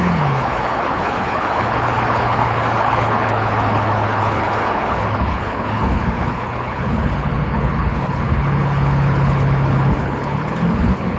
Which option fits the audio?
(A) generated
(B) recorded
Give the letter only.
A